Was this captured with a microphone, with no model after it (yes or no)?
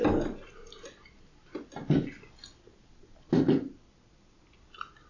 yes